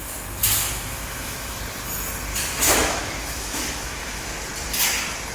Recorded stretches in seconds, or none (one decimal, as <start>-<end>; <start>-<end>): 0.0-0.6; 1.6-2.3; 4.3-5.3